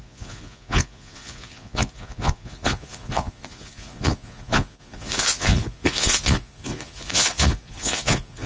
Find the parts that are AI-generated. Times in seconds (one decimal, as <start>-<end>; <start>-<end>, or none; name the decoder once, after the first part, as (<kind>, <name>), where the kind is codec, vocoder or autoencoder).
0.0-8.5 (vocoder, Vocos)